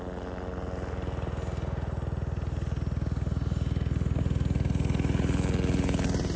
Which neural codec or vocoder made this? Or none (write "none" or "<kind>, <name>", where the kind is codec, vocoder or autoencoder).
none